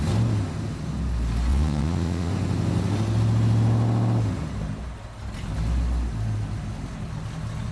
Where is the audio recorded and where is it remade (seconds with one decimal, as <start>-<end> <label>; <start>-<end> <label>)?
0.0-1.5 recorded; 1.5-2.3 remade; 2.3-7.7 recorded